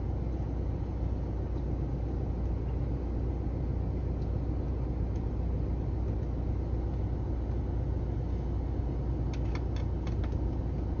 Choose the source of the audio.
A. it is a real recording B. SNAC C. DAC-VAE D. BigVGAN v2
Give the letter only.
A